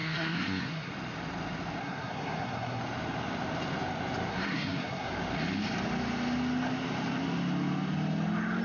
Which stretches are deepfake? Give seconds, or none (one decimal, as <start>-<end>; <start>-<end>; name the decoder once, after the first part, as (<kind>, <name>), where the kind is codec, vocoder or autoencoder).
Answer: 0.0-0.9 (codec, SNAC); 1.8-2.8; 4.3-5.1